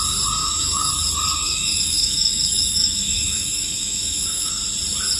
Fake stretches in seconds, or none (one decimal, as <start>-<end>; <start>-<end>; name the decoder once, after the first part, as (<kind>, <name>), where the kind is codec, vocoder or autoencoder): 0.4-0.9 (autoencoder, DAC-VAE); 1.4-4.5